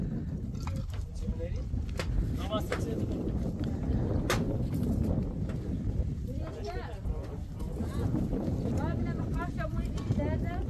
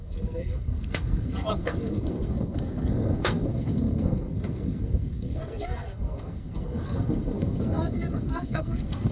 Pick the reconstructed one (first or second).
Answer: second